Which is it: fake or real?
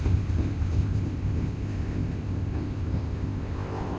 fake